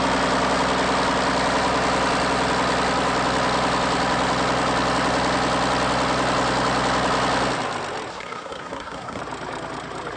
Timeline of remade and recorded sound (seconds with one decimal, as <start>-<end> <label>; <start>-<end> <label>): 0.0-8.1 recorded; 8.1-9.2 remade; 9.2-10.2 recorded